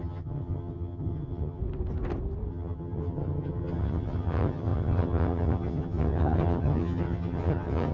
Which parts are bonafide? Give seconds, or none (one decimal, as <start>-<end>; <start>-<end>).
1.6-2.5